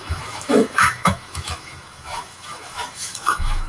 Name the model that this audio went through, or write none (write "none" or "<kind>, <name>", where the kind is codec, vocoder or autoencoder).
autoencoder, DAC-VAE